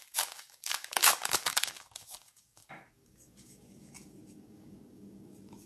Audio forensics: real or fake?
fake